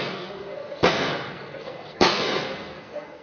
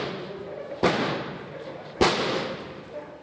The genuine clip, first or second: second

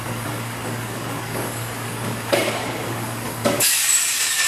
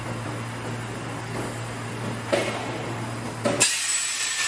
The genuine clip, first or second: second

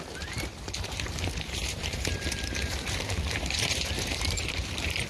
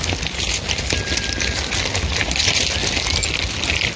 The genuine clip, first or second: second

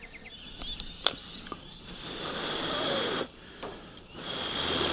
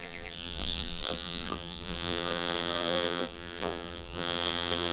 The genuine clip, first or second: first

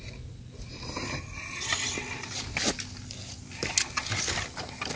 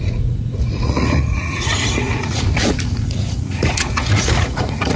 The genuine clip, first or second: first